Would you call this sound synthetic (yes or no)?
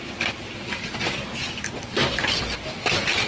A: no